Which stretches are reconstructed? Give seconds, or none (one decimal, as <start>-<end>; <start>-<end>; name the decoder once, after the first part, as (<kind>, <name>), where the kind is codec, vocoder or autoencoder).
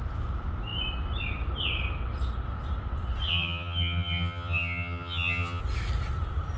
3.3-5.6 (vocoder, HiFi-GAN)